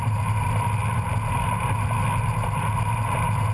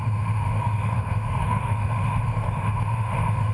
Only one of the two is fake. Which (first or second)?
second